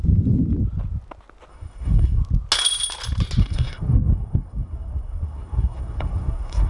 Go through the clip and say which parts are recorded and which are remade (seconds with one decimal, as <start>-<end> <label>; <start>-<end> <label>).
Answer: 0.0-1.5 recorded; 1.5-2.2 remade; 2.2-3.4 recorded; 3.4-6.7 remade